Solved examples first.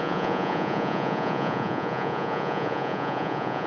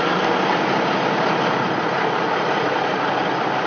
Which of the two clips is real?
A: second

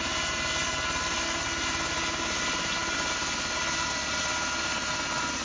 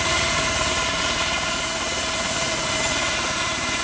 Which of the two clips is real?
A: first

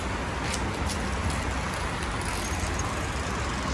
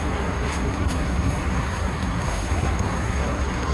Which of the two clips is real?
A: first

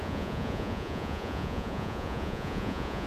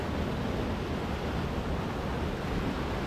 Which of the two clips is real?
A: second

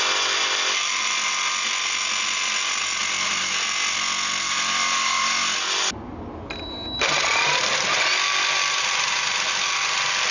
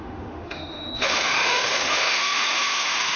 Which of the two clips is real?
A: first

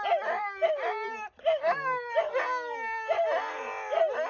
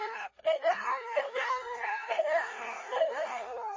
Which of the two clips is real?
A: first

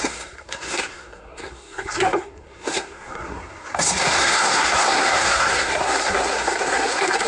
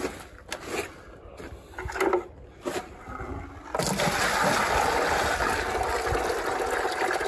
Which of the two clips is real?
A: second